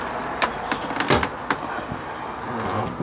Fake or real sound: real